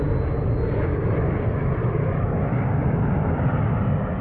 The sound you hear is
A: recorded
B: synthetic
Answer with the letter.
A